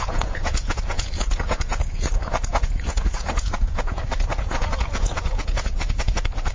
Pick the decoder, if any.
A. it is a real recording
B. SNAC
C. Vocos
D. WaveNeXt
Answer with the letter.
C